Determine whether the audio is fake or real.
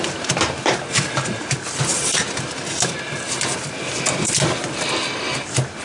real